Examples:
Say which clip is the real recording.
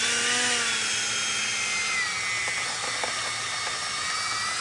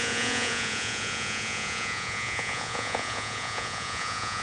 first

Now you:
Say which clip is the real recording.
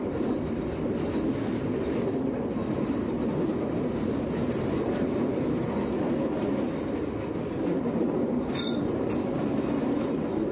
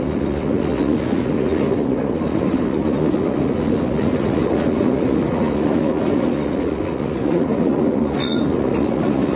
first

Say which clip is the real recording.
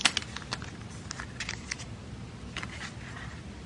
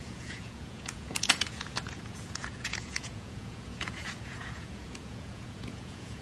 first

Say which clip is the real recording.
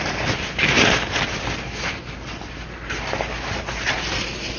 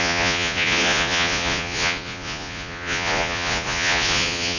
first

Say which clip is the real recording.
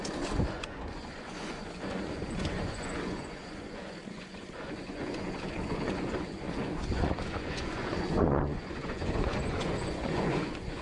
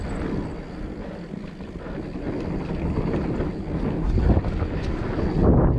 second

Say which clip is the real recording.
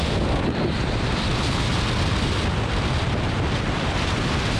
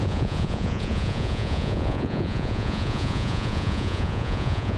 first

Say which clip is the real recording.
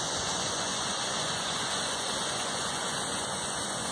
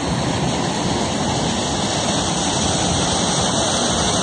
second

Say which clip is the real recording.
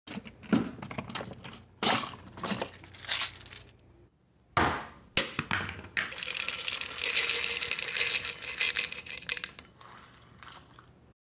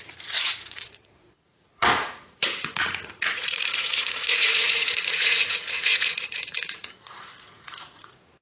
first